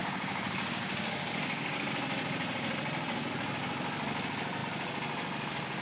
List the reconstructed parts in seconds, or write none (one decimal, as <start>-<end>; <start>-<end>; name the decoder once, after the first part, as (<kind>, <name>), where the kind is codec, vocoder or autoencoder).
0.0-1.8 (codec, DAC)